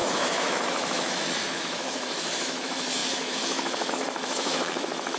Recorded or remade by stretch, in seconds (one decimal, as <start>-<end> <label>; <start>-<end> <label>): 0.0-5.2 remade